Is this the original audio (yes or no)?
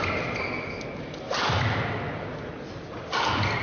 yes